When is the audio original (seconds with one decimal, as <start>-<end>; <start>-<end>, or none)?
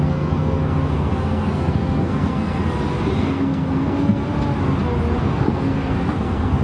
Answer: 2.6-3.2; 4.3-5.2